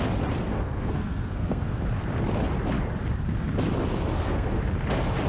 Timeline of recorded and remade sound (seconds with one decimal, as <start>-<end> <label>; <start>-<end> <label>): 0.0-0.4 recorded; 0.4-1.8 remade; 1.8-4.1 recorded; 4.1-4.6 remade; 4.6-5.3 recorded